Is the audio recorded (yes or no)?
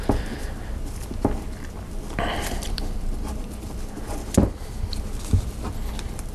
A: no